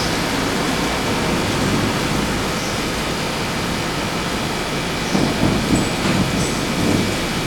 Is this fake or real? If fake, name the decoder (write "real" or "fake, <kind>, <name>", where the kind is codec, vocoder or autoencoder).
real